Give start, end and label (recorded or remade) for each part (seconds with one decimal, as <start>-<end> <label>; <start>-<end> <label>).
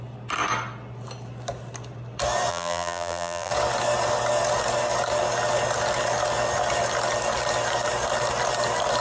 0.0-2.5 recorded; 2.5-3.5 remade; 3.5-9.0 recorded